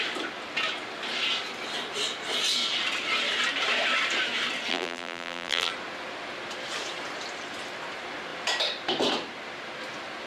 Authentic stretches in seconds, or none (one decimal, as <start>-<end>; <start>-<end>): 0.0-4.7; 5.7-10.3